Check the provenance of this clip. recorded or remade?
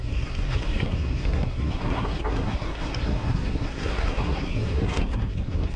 remade